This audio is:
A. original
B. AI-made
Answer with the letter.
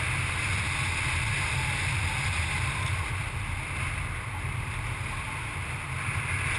A